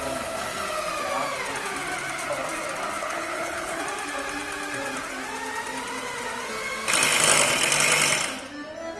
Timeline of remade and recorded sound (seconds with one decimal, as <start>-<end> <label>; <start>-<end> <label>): 0.0-3.0 recorded; 3.0-3.8 remade; 3.8-9.0 recorded